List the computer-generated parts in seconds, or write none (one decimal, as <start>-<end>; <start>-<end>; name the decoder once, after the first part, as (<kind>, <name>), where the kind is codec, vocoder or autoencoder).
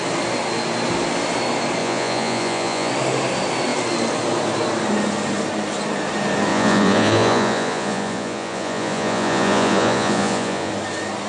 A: 1.8-2.9 (vocoder, Vocos); 6.5-10.7